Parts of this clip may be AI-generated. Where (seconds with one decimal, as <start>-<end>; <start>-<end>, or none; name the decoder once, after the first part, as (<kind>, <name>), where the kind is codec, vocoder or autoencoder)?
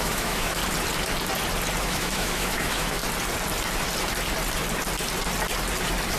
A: 0.0-0.6 (autoencoder, DAC-VAE); 1.8-3.0